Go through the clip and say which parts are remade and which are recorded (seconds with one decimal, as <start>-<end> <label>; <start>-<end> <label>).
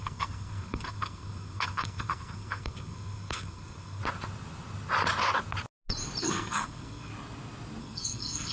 0.0-4.0 remade; 4.0-6.2 recorded; 6.2-7.1 remade; 7.1-7.8 recorded; 7.8-8.5 remade